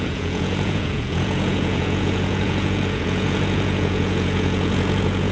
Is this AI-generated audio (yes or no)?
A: yes